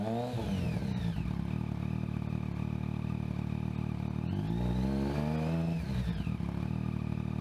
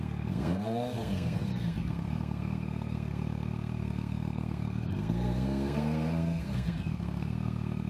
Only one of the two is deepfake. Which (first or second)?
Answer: second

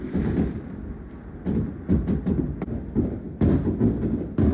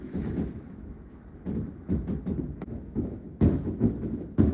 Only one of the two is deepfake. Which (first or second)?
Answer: second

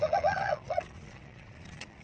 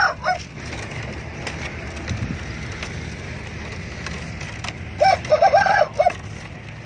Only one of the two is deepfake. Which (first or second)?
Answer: first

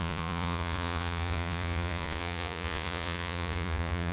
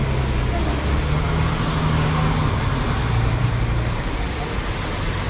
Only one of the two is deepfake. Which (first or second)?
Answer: first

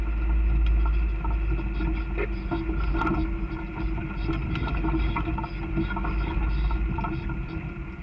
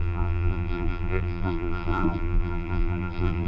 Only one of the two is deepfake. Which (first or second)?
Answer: second